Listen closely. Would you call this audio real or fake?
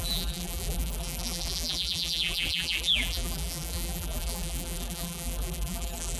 fake